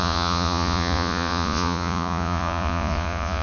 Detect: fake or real fake